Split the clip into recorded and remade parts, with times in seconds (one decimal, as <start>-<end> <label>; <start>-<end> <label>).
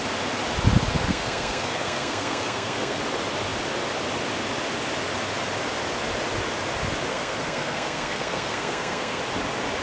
0.0-1.1 recorded; 1.1-3.0 remade; 3.0-7.1 recorded; 7.1-9.2 remade; 9.2-9.8 recorded